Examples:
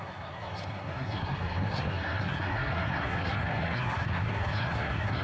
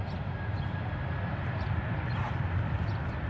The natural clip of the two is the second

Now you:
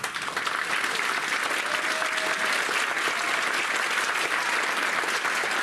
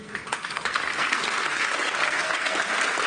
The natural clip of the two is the first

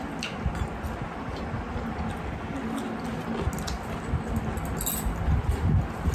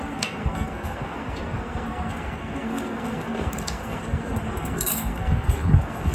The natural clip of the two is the first